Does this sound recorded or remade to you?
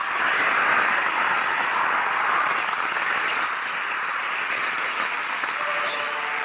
recorded